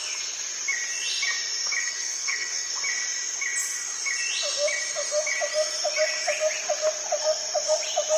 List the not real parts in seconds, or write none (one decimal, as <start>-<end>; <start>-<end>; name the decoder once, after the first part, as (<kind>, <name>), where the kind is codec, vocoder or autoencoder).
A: 1.8-2.7 (codec, SNAC)